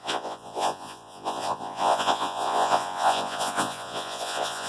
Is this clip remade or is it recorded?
remade